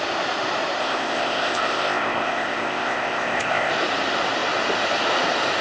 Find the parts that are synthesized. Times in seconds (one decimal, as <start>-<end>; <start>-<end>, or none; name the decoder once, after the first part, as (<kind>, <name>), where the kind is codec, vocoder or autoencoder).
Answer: 0.8-3.7 (codec, ZipCodec)